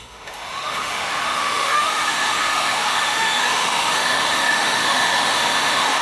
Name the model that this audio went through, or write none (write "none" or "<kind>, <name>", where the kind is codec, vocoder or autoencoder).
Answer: autoencoder, DAC-VAE